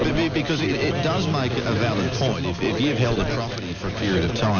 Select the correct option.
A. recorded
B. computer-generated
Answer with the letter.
A